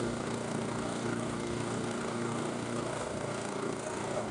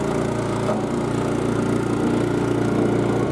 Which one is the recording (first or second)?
second